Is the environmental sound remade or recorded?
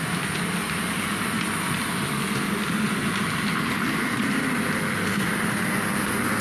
recorded